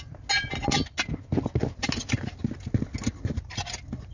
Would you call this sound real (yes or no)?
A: yes